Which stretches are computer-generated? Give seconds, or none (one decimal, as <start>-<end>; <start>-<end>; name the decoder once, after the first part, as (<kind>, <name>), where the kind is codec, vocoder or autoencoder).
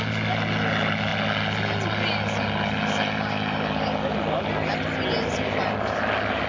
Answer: none